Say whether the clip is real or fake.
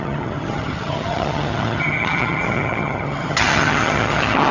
fake